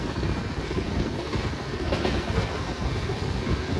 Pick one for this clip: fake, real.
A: fake